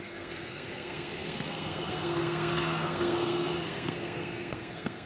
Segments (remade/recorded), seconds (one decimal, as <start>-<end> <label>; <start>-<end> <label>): 0.0-5.1 remade